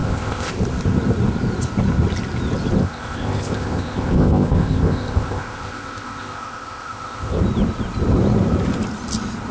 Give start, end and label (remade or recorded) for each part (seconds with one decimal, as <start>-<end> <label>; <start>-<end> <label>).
0.0-0.5 remade; 0.5-2.8 recorded; 2.8-7.4 remade; 7.4-9.5 recorded